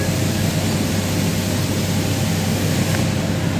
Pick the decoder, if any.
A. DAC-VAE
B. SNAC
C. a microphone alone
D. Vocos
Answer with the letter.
C